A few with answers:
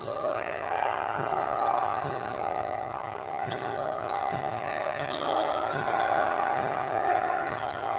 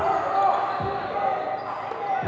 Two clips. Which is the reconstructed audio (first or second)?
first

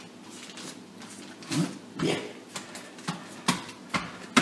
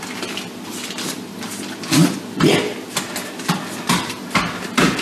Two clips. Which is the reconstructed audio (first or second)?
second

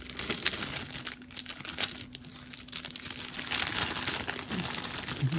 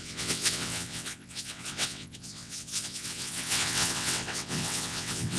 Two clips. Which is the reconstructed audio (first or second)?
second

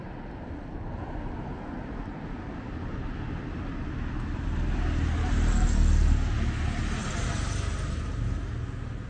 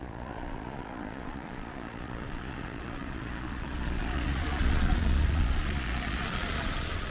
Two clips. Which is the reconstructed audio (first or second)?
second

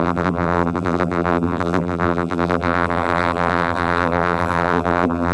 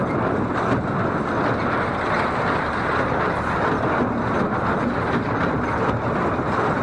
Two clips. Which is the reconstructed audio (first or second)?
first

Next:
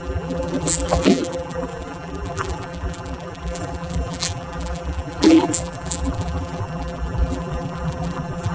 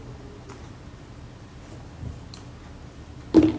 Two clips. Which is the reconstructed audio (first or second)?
first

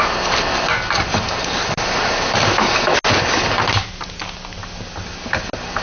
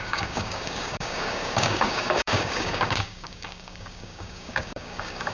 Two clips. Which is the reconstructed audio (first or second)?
second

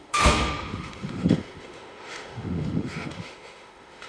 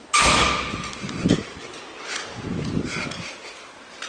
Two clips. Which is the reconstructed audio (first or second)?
first